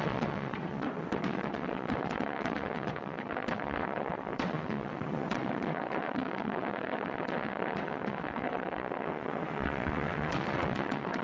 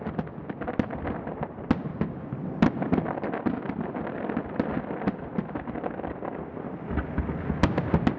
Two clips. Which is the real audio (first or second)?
second